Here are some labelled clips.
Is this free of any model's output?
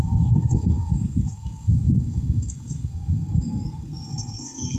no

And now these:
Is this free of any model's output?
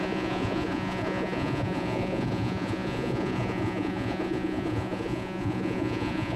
no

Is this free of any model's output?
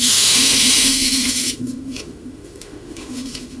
no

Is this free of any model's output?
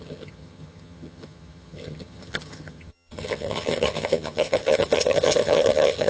no